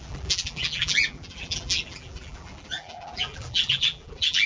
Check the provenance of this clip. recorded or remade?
remade